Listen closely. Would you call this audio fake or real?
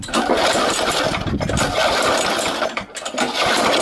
real